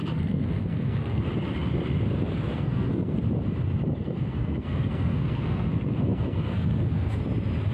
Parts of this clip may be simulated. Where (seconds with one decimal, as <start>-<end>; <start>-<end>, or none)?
0.0-1.2; 2.5-3.2; 4.0-7.2